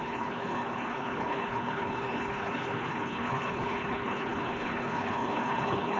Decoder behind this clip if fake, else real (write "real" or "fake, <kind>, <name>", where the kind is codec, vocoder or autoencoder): fake, codec, HILCodec